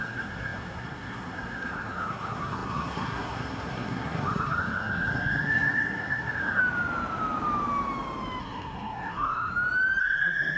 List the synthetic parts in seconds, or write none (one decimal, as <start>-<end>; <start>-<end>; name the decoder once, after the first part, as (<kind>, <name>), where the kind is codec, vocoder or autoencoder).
0.0-6.6 (codec, SNAC); 8.4-9.5; 10.0-10.6